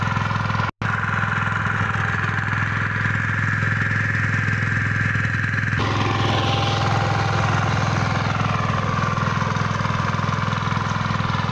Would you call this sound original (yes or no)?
yes